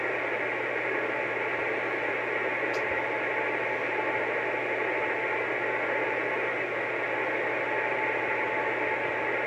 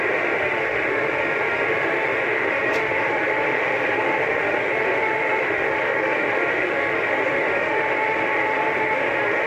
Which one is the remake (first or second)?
second